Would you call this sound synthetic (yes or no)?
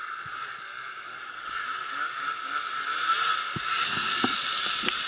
no